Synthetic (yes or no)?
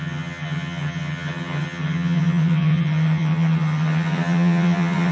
yes